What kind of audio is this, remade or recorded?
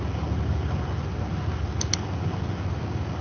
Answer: recorded